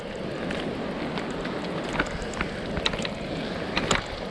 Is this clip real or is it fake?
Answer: real